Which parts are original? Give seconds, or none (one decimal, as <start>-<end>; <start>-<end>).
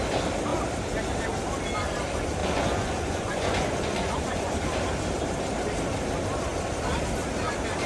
0.0-2.4; 4.5-7.9